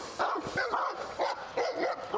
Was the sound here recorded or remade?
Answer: recorded